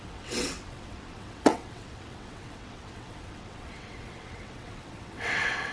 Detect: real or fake fake